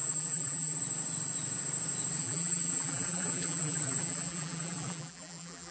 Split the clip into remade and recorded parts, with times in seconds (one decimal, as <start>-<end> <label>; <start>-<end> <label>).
0.0-0.8 remade; 0.8-2.2 recorded; 2.2-5.7 remade